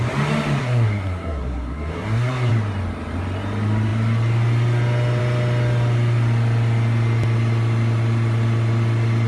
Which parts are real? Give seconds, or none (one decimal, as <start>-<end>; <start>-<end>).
0.0-0.6; 2.5-9.3